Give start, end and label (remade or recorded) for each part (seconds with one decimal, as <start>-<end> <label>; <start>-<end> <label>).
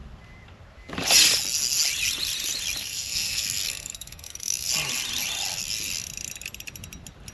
0.0-2.8 recorded; 2.8-4.7 remade; 4.7-7.3 recorded